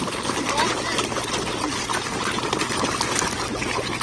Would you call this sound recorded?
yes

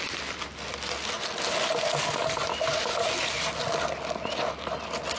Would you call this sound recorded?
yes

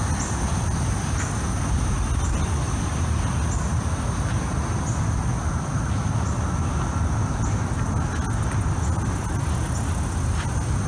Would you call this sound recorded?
yes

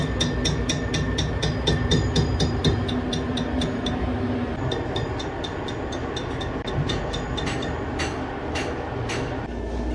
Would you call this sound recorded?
yes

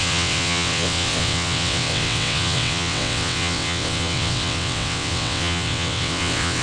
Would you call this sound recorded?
no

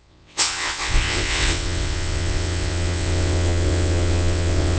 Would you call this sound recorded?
no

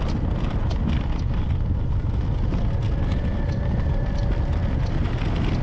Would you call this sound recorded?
yes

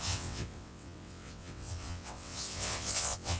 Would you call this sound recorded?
no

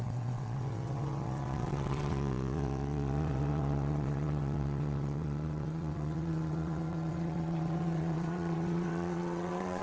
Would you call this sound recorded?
no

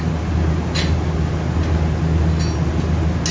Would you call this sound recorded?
yes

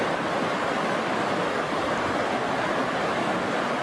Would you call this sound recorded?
yes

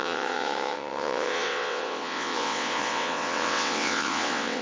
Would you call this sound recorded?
no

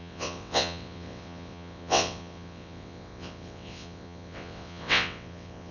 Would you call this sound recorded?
no